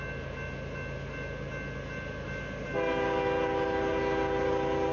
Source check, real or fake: real